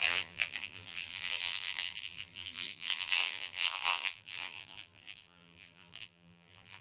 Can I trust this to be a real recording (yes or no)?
no